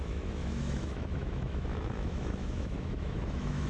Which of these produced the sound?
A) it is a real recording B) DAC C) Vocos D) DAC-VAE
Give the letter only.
D